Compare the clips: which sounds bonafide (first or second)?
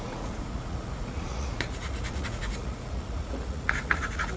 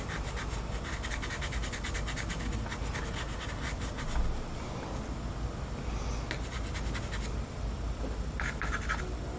second